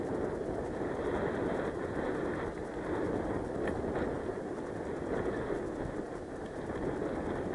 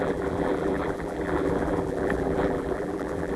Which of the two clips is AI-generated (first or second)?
second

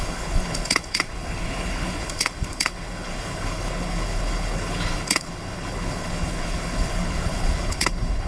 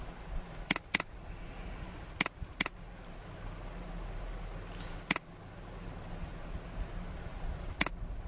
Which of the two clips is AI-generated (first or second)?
first